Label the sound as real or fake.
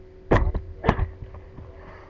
real